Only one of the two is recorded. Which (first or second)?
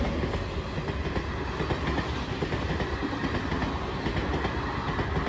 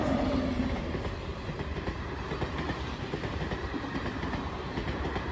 first